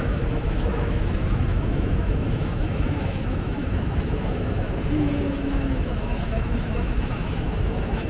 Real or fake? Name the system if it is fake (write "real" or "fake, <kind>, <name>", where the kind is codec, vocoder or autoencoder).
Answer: fake, autoencoder, DAC-VAE